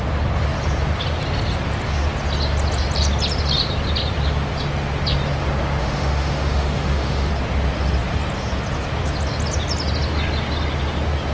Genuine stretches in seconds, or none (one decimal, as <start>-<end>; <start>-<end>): 0.0-5.8; 7.3-11.3